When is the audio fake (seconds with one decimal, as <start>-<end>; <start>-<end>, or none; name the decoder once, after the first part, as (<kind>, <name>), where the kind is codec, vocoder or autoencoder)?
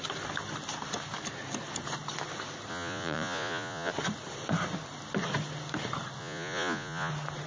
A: 2.7-3.9 (vocoder, Vocos); 6.2-7.1